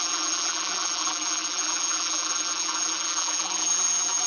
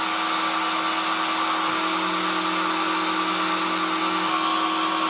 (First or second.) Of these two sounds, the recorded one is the second